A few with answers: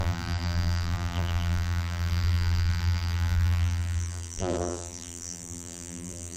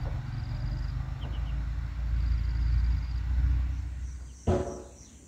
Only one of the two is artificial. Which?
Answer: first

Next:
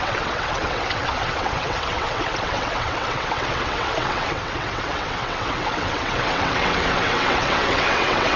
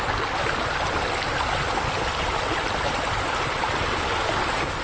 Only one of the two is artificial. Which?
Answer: first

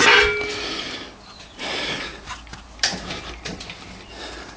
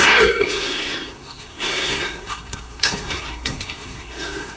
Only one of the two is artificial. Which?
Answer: second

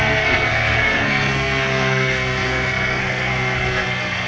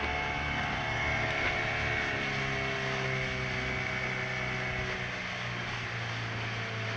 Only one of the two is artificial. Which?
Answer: first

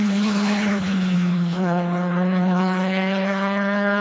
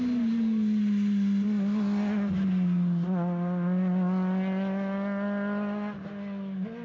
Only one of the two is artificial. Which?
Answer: first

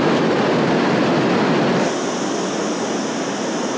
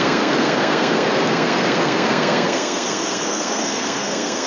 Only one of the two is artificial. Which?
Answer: second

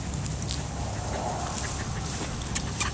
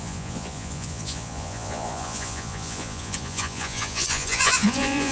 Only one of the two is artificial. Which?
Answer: second